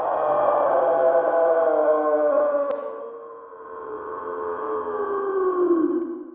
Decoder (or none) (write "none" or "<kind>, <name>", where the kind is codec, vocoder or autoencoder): none